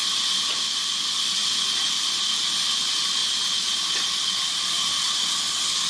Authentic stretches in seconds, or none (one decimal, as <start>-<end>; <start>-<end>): 0.0-5.9